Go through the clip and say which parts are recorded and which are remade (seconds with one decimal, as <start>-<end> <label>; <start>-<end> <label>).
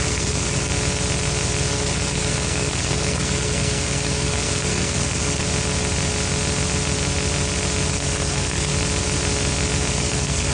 0.0-0.7 remade; 0.7-1.7 recorded; 1.7-5.4 remade; 5.4-7.9 recorded; 7.9-8.7 remade; 8.7-9.9 recorded; 9.9-10.5 remade